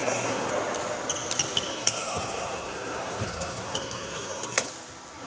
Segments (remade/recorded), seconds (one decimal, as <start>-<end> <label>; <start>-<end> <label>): 0.0-0.5 remade; 0.5-1.7 recorded; 1.7-4.7 remade; 4.7-5.3 recorded